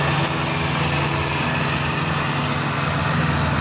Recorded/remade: recorded